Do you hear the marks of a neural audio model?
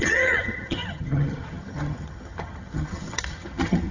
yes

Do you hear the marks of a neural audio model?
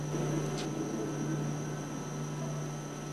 no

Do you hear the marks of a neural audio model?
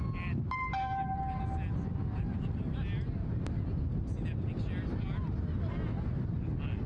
no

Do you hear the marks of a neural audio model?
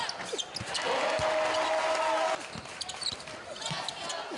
no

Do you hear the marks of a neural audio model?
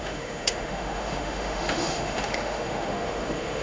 yes